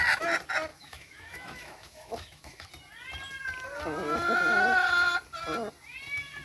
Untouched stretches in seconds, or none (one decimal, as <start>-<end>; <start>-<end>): 0.0-0.7; 2.7-6.4